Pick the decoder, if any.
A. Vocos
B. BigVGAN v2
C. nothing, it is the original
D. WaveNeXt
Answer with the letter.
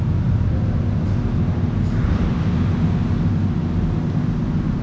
C